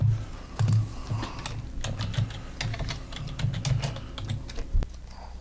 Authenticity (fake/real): real